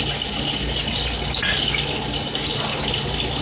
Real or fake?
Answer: real